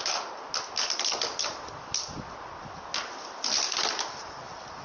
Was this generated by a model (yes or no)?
no